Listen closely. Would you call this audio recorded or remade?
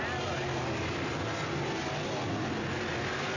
recorded